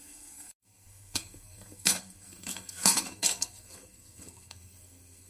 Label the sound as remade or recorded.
remade